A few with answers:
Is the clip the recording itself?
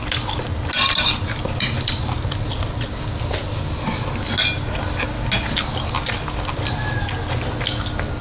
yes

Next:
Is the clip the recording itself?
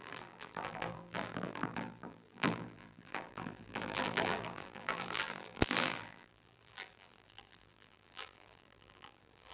no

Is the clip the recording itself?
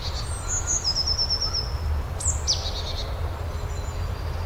yes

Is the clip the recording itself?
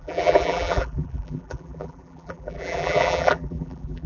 no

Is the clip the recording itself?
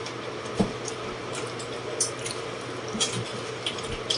yes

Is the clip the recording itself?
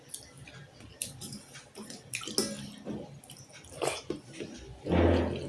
yes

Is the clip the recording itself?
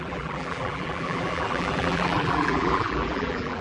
no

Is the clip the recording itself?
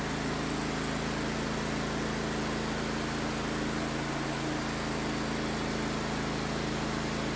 yes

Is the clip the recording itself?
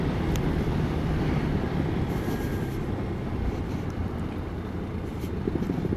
no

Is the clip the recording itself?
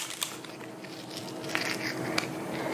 yes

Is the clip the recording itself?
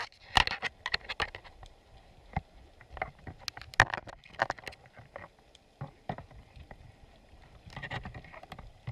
yes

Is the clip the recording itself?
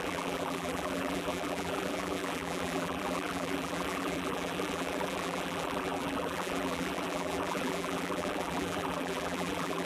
no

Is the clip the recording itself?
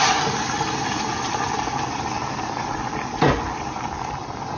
no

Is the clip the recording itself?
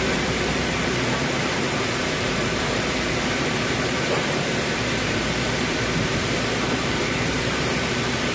no